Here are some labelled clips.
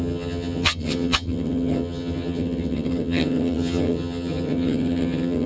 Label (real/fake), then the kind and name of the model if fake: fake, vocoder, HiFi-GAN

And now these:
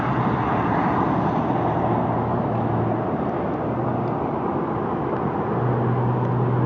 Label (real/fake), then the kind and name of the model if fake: real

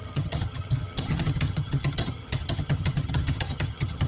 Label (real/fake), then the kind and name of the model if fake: fake, vocoder, HiFi-GAN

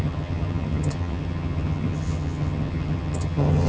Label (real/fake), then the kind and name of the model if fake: fake, vocoder, HiFi-GAN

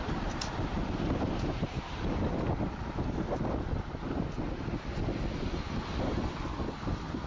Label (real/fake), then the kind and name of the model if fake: real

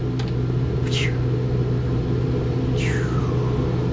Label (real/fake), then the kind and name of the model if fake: real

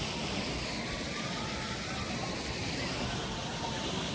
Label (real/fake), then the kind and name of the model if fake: real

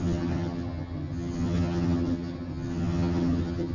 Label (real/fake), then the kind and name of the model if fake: fake, vocoder, HiFi-GAN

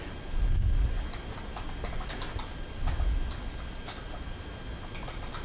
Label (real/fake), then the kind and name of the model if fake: real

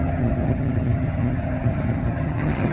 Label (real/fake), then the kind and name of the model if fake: fake, vocoder, HiFi-GAN